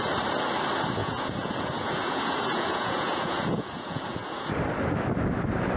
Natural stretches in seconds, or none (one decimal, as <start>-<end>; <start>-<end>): 0.0-1.0; 4.5-5.8

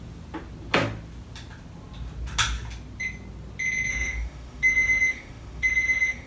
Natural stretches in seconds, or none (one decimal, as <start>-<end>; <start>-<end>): 0.0-3.9

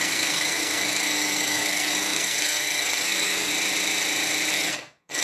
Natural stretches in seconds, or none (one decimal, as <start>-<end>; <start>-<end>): 3.5-4.5

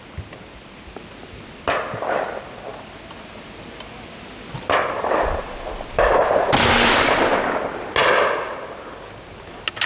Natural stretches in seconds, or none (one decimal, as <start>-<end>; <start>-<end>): 0.0-9.8

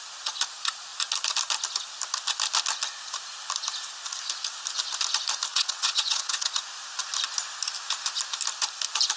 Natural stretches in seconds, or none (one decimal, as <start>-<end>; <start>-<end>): 0.0-5.5; 6.5-9.2

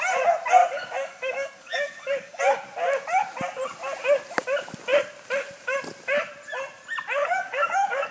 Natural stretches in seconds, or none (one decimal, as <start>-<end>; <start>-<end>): 0.0-0.6; 2.4-7.2

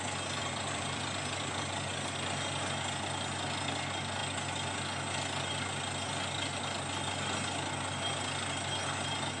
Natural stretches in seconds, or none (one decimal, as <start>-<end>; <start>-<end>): 0.0-0.4; 1.9-9.4

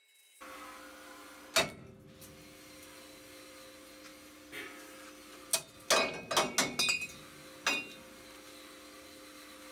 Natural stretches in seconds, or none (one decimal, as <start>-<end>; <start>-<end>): 0.0-9.7